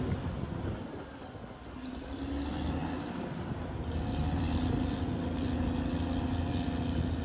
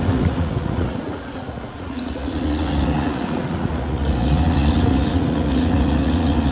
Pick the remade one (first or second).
second